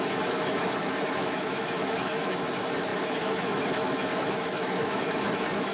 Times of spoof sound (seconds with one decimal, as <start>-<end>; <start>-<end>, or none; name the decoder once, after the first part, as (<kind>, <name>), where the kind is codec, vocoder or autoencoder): 0.0-5.7 (autoencoder, DAC-VAE)